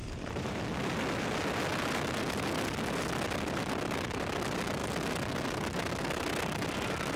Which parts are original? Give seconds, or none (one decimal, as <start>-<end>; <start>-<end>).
0.6-7.2